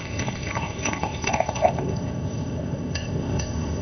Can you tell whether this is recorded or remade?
remade